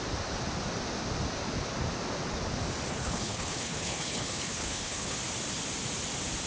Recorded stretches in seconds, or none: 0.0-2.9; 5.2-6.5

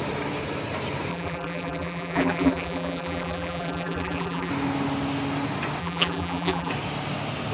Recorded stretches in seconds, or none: 0.0-1.1; 4.5-5.8; 6.7-7.5

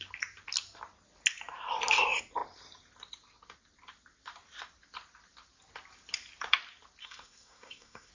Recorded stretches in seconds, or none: 0.0-7.0

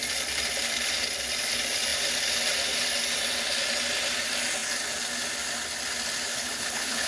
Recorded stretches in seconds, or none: 0.0-6.3

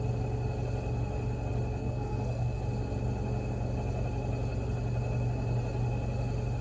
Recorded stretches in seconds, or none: 0.0-1.8; 2.6-6.6

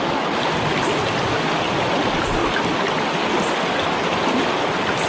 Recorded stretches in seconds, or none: 0.0-5.1

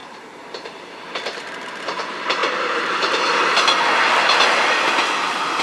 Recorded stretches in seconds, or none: 0.9-2.4; 3.0-5.6